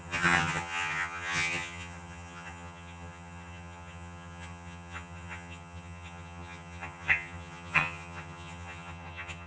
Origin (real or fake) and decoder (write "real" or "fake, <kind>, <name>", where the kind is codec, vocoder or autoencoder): fake, vocoder, HiFi-GAN